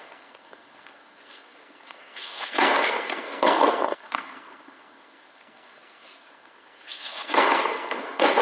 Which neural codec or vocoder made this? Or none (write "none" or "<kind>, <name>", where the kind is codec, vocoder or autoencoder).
codec, SNAC